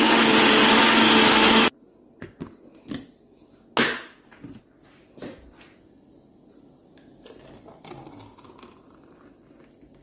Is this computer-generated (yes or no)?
no